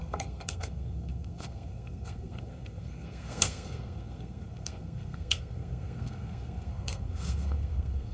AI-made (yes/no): yes